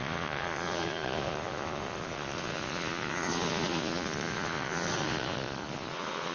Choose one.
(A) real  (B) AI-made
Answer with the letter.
B